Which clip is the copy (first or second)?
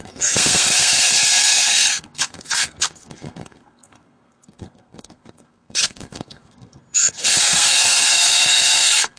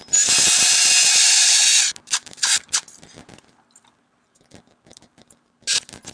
first